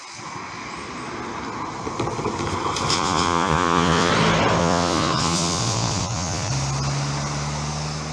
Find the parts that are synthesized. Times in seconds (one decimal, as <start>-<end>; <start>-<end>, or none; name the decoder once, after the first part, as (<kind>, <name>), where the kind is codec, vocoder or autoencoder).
2.9-4.1 (vocoder, Vocos); 4.6-6.5